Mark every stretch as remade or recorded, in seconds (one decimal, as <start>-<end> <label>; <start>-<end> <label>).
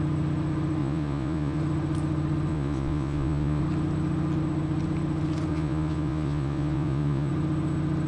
0.0-0.8 recorded; 0.8-1.6 remade; 1.6-2.5 recorded; 2.5-3.6 remade; 3.6-5.5 recorded; 5.5-7.3 remade; 7.3-8.1 recorded